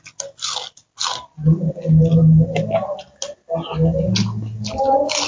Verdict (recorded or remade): recorded